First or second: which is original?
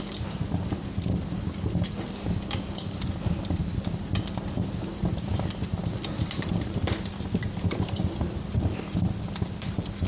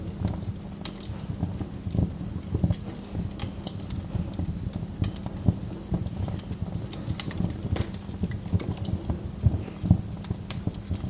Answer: second